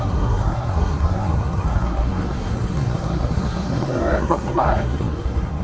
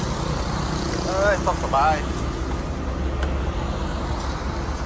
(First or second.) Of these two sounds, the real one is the second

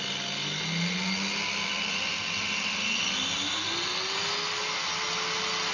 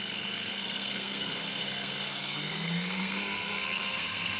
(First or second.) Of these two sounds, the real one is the first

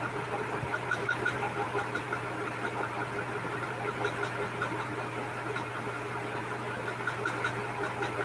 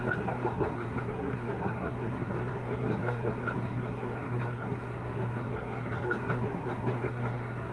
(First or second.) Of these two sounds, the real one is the first